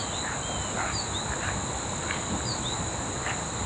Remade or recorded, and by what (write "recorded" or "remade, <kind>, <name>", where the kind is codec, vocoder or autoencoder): recorded